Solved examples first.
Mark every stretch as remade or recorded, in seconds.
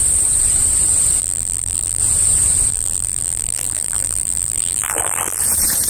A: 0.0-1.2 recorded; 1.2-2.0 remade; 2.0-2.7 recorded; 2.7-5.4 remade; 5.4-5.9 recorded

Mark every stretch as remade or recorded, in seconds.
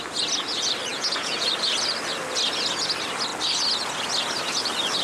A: 0.0-0.9 recorded; 0.9-1.5 remade; 1.5-5.0 recorded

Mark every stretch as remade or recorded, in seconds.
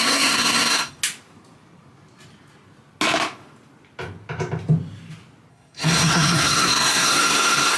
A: 0.0-1.0 remade; 1.0-5.5 recorded; 5.5-7.8 remade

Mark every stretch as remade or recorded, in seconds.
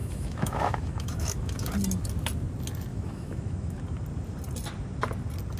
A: 0.0-1.7 remade; 1.7-2.9 recorded; 2.9-3.8 remade; 3.8-5.6 recorded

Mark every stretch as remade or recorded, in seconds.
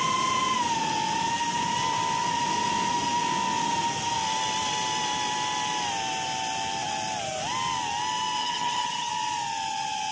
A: 0.0-8.4 recorded; 8.4-9.1 remade; 9.1-10.1 recorded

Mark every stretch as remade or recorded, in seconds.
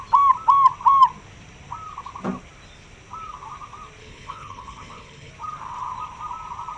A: 0.0-4.0 recorded; 4.0-5.3 remade; 5.3-6.8 recorded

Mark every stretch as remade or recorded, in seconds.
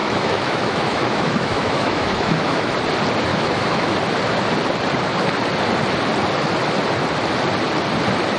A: 0.0-2.7 remade; 2.7-3.3 recorded; 3.3-3.9 remade; 3.9-8.4 recorded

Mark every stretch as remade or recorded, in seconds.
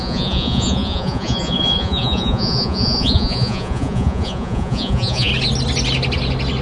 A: 0.0-5.3 remade; 5.3-6.6 recorded